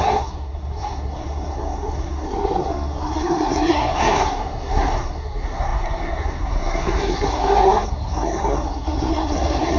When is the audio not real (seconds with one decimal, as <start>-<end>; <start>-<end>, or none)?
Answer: 0.0-9.8